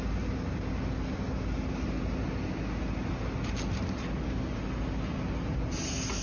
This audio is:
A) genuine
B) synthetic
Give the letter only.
A